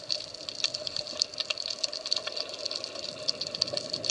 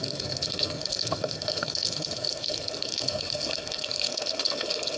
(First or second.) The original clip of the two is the first